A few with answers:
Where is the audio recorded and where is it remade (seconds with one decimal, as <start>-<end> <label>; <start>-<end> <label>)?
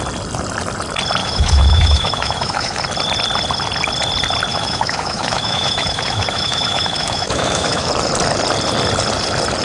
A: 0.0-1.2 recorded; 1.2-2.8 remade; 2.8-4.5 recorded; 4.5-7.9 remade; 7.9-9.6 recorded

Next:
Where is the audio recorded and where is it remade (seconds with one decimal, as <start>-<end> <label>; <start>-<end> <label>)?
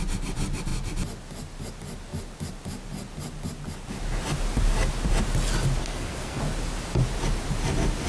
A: 0.0-5.8 recorded; 5.8-6.4 remade; 6.4-8.1 recorded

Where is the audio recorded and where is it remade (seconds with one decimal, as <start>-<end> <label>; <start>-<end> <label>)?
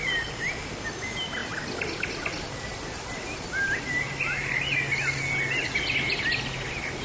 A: 0.0-7.0 recorded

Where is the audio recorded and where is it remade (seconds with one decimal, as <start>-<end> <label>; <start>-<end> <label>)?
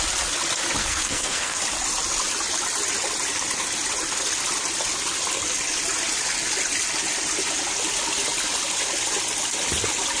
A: 0.0-0.8 recorded; 0.8-1.6 remade; 1.6-10.2 recorded